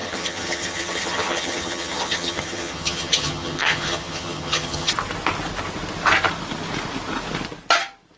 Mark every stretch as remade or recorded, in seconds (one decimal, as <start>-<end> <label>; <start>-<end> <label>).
0.0-4.9 remade; 4.9-8.2 recorded